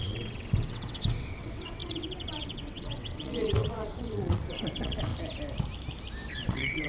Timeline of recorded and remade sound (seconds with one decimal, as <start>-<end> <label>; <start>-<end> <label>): 0.0-5.1 remade; 5.1-6.3 recorded; 6.3-6.9 remade